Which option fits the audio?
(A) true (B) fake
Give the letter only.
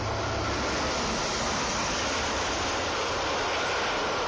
A